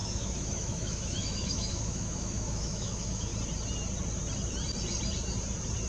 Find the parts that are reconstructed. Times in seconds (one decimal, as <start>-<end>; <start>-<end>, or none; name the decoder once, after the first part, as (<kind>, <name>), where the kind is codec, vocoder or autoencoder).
0.0-3.3 (autoencoder, DAC-VAE)